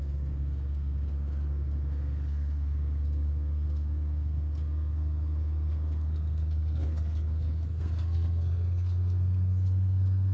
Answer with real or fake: fake